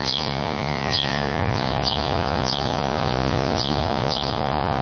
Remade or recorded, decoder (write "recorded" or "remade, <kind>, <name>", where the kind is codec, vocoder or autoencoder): remade, vocoder, Vocos